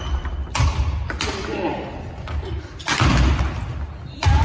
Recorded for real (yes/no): yes